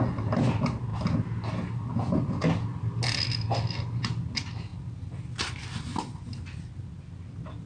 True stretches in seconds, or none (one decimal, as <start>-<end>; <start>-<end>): 0.0-7.7